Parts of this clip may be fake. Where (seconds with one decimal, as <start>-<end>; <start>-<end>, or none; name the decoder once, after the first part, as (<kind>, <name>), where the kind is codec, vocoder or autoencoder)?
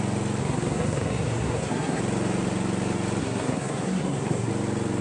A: 0.4-2.0 (codec, SNAC); 3.2-4.5